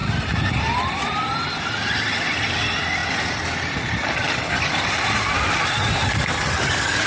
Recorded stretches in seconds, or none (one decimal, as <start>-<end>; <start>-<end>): 0.0-7.1